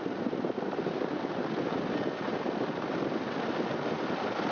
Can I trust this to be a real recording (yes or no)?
yes